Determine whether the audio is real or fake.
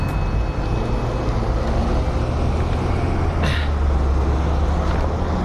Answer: real